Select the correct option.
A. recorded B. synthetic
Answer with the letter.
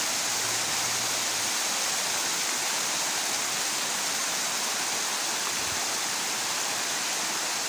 A